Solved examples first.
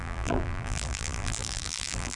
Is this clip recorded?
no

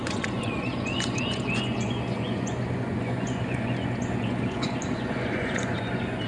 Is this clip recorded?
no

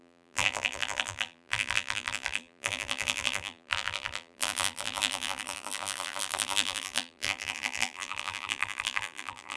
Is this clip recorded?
no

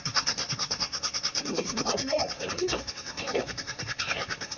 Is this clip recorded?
no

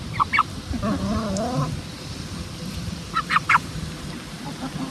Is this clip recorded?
yes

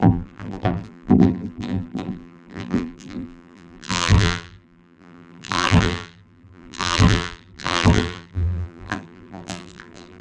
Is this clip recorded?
no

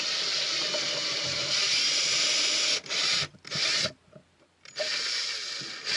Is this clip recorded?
yes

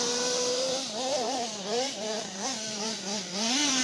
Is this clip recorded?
no